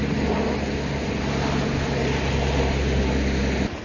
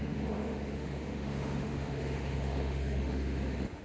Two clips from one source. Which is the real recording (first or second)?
first